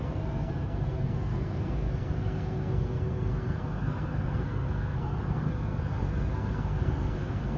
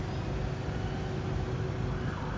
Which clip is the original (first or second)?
second